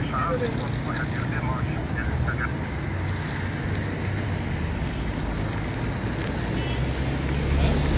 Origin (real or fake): real